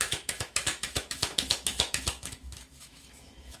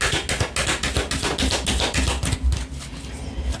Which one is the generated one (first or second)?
first